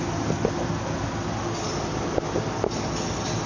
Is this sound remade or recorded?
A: recorded